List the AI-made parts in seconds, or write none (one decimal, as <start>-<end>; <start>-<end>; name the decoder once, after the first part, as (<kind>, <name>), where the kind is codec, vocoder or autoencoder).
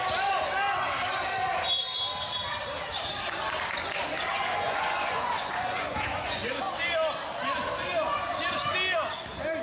4.3-6.5 (vocoder, Vocos)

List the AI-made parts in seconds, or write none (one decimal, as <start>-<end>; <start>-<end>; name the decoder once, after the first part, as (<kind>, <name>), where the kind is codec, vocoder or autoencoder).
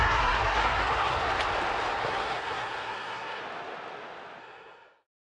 0.0-1.3 (codec, SNAC); 2.0-3.4; 4.4-5.2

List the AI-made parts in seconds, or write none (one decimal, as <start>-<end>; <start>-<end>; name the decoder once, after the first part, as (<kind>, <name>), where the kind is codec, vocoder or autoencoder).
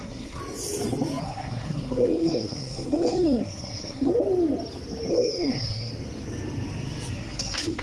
0.0-0.4 (codec, SNAC); 1.2-4.1; 5.1-5.9; 7.1-7.8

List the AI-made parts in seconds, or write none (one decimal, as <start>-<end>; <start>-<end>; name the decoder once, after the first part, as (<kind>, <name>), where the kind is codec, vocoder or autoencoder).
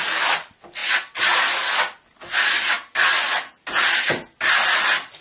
none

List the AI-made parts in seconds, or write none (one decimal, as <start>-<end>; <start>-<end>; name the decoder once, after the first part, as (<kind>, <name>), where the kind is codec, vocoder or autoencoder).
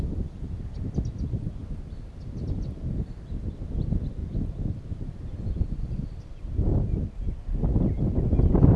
4.2-5.1 (vocoder, BigVGAN v2); 6.7-8.0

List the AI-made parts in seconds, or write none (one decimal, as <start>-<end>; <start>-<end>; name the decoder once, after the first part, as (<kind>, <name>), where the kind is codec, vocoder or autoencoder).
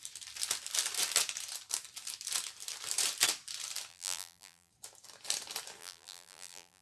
3.9-4.7 (vocoder, BigVGAN v2); 5.8-6.8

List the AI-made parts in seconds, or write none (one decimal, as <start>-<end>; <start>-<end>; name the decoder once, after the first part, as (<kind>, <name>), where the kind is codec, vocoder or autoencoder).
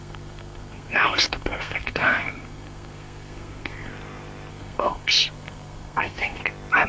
0.0-3.9 (codec, SNAC); 4.5-6.4